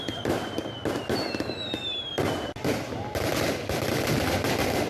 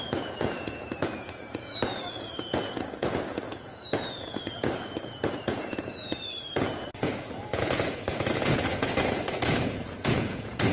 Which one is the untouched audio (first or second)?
first